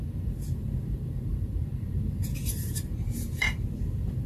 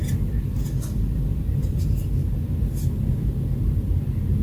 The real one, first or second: second